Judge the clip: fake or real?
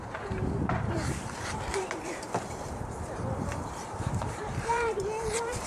fake